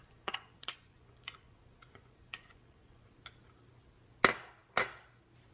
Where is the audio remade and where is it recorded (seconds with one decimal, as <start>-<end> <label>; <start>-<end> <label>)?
0.0-3.1 remade; 3.1-5.5 recorded